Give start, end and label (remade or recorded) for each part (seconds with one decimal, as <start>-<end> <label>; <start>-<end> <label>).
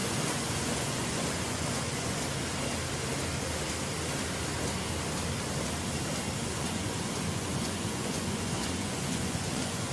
0.0-2.2 remade; 2.2-6.4 recorded; 6.4-9.9 remade